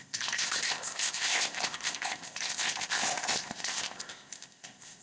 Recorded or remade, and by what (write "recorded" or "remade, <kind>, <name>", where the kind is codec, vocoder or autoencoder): remade, codec, ZipCodec